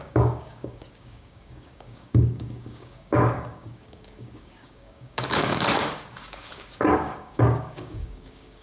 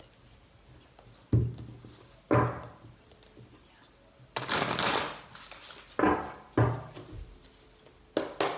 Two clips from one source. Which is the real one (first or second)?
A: second